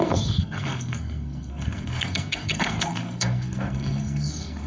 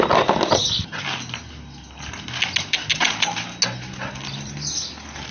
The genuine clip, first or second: second